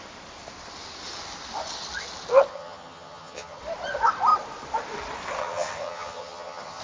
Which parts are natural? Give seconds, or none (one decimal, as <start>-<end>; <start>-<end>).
0.0-2.5; 3.6-5.4